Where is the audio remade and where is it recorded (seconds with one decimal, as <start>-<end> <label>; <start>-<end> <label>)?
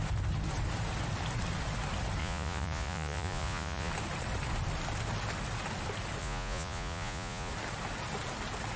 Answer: 0.0-2.2 recorded; 2.2-3.9 remade; 3.9-6.2 recorded; 6.2-7.5 remade; 7.5-8.8 recorded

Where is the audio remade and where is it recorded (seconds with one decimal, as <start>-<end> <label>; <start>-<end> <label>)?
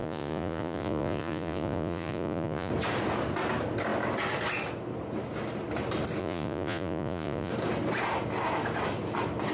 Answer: 0.0-2.7 remade; 2.7-6.2 recorded; 6.2-7.5 remade; 7.5-9.5 recorded